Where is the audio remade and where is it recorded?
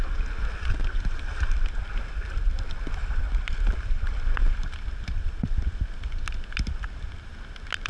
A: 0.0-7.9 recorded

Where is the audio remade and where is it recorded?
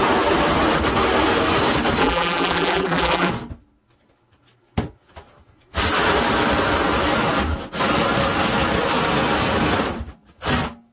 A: 0.0-2.0 recorded; 2.0-3.3 remade; 3.3-10.9 recorded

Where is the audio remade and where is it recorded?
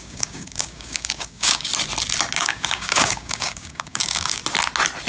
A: 0.0-1.7 remade; 1.7-2.4 recorded; 2.4-4.4 remade; 4.4-5.1 recorded